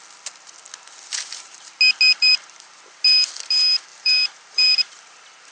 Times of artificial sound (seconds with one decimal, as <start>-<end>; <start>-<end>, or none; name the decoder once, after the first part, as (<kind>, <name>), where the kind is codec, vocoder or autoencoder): 1.1-1.7 (vocoder, BigVGAN v2); 2.1-2.8; 3.9-4.9